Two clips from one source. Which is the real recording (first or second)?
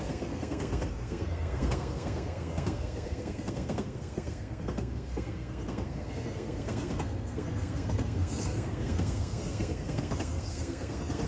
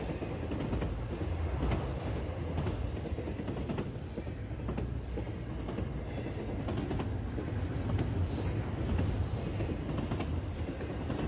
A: second